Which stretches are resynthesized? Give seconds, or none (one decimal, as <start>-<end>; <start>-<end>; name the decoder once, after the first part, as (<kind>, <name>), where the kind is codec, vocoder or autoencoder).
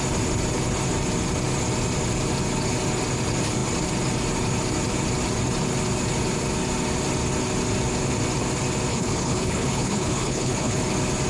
8.9-10.8 (codec, HILCodec)